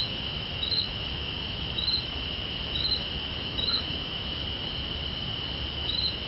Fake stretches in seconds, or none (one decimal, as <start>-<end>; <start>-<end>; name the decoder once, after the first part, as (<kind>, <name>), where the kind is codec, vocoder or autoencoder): 0.0-4.4 (autoencoder, DAC-VAE); 5.7-6.3